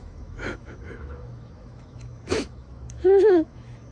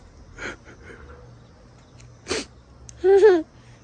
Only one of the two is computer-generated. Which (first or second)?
first